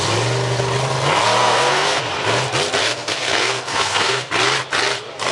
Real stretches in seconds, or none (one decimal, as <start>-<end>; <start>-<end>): 0.0-1.4; 2.0-2.8; 4.3-5.3